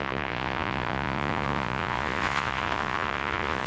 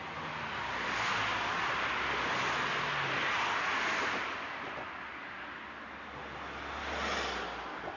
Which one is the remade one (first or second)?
first